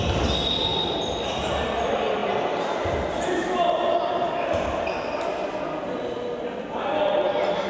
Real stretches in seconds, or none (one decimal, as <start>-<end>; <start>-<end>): 0.0-0.7; 1.5-2.2; 4.8-7.7